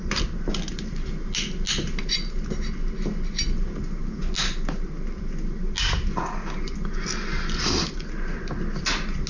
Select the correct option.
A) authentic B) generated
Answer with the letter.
A